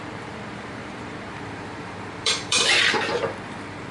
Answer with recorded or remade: remade